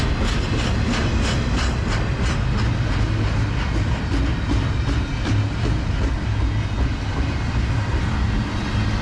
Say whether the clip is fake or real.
real